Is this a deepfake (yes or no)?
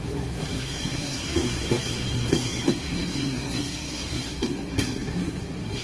yes